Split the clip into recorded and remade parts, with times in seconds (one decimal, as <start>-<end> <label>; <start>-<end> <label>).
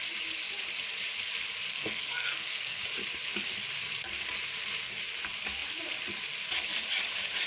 0.0-1.7 recorded; 1.7-2.8 remade; 2.8-7.5 recorded